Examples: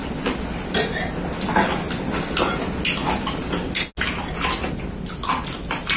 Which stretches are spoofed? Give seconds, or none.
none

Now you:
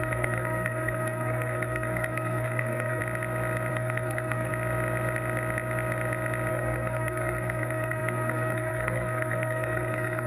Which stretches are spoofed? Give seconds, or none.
0.0-3.0; 3.7-4.5; 6.5-10.3

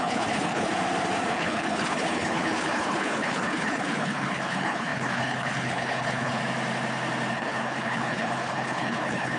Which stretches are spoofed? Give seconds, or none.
0.0-0.7; 1.3-6.4; 7.3-9.4

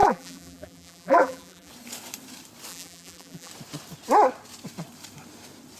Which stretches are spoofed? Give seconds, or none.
0.0-1.7; 2.7-3.5